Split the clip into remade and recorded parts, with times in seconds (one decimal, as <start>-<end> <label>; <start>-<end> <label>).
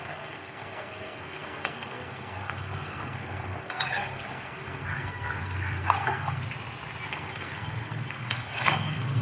0.0-6.4 remade; 6.4-7.1 recorded; 7.1-9.2 remade